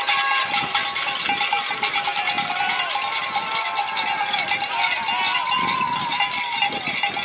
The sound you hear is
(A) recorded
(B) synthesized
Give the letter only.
A